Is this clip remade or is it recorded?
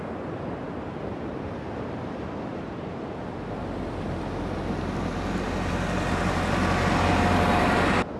recorded